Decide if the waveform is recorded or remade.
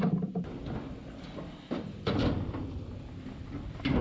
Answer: recorded